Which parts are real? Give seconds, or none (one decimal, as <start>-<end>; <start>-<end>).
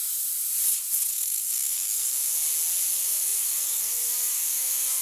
0.0-1.1; 2.4-2.9